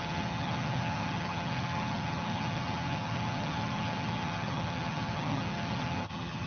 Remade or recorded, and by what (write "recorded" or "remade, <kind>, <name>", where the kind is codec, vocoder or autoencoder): remade, vocoder, HiFi-GAN